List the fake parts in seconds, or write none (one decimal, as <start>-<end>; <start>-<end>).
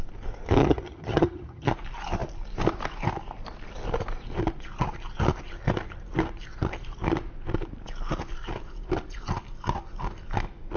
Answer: 0.6-1.7